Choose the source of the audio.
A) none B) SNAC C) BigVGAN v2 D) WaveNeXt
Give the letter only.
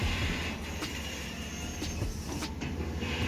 C